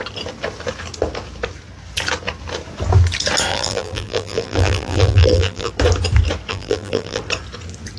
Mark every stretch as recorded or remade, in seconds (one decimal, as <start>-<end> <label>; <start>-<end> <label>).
0.0-3.5 recorded; 3.5-5.7 remade; 5.7-6.5 recorded; 6.5-7.2 remade; 7.2-8.0 recorded